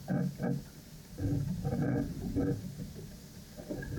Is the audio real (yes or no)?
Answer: yes